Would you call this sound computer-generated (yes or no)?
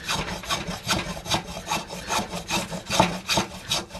no